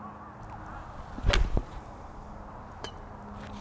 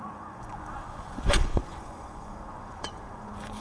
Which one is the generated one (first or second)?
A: second